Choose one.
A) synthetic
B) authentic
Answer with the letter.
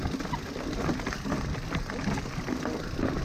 B